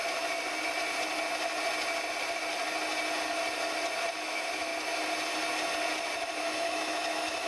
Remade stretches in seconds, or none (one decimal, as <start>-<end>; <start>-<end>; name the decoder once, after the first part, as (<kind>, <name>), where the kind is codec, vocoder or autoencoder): 4.1-4.7 (autoencoder, DAC-VAE); 6.4-7.5